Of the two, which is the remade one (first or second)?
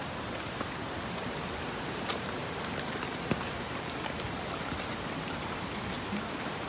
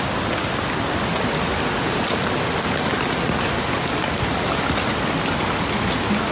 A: first